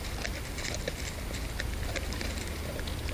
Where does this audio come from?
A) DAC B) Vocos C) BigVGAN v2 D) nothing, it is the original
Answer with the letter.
D